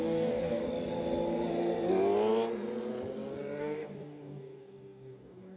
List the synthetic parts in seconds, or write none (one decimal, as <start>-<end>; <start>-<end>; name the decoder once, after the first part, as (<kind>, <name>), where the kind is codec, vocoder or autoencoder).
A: 0.0-0.6 (codec, DAC); 3.6-5.6